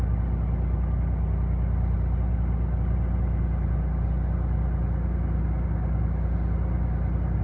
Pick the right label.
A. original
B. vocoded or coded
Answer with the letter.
A